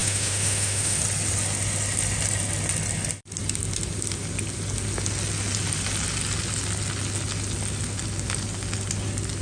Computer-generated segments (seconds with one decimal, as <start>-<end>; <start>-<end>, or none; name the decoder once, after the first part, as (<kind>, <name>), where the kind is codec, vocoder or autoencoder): 0.0-1.0 (autoencoder, DAC-VAE)